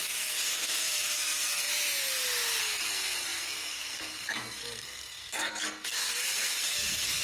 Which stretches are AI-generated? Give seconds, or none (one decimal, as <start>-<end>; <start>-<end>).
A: 0.0-1.7; 2.6-7.2